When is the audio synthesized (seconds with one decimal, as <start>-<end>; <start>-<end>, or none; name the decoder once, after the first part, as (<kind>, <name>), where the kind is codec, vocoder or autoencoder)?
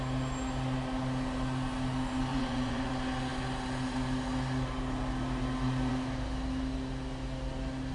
2.3-2.9 (vocoder, Vocos)